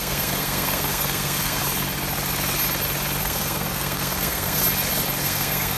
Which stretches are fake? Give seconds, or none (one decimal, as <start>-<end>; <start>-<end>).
0.0-1.6; 3.2-4.6; 5.2-5.8